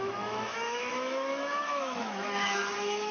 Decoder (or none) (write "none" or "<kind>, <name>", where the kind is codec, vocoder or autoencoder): autoencoder, DAC-VAE